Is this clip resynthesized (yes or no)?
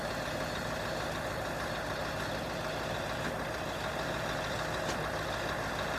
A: no